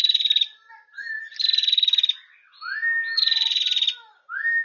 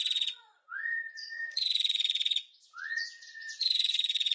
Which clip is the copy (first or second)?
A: second